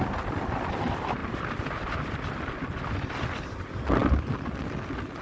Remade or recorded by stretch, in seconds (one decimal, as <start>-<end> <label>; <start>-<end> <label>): 0.0-5.2 recorded